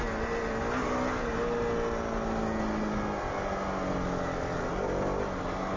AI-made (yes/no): no